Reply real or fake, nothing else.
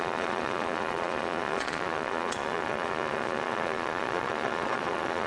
fake